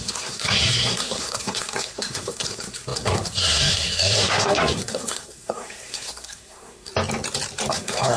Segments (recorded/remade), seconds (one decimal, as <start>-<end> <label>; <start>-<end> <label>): 0.0-6.9 remade; 6.9-7.7 recorded; 7.7-8.2 remade

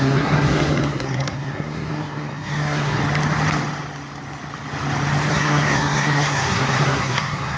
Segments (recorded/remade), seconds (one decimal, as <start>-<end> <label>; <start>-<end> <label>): 0.0-3.0 remade; 3.0-5.3 recorded; 5.3-7.6 remade

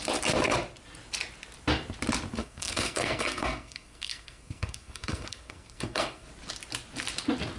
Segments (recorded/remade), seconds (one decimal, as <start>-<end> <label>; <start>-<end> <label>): 0.0-2.4 recorded; 2.4-6.3 remade; 6.3-7.6 recorded

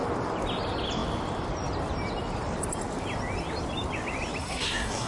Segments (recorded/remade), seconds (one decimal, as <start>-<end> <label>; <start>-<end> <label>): 0.0-4.4 recorded; 4.4-5.1 remade